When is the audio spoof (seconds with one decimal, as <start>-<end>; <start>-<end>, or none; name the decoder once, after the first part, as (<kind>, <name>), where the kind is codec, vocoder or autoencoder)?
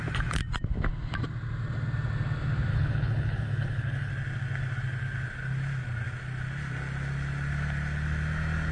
2.7-4.1 (codec, HILCodec)